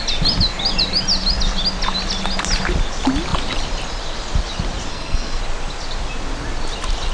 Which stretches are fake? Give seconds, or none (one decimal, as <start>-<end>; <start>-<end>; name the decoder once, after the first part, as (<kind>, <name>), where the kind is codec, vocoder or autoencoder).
4.9-5.4 (codec, SNAC)